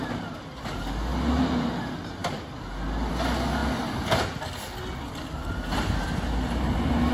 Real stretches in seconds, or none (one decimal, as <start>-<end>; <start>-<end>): 0.0-7.1